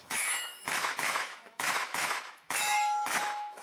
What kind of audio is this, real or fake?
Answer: fake